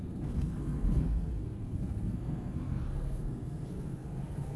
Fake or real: fake